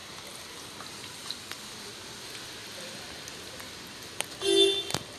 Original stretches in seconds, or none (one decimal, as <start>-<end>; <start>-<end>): 1.6-2.6; 4.4-5.2